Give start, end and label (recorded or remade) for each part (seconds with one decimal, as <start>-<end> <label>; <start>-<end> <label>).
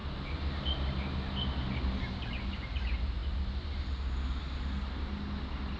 0.0-5.8 recorded